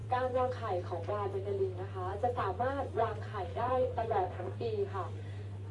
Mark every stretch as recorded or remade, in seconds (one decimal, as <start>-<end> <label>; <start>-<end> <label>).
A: 0.0-0.5 remade; 0.5-2.1 recorded; 2.1-4.7 remade; 4.7-5.7 recorded